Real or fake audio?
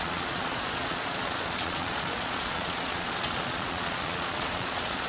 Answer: fake